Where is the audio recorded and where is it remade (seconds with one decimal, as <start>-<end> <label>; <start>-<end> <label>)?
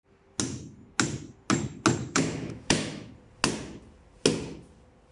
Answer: 0.0-2.0 recorded; 2.0-3.1 remade; 3.1-5.1 recorded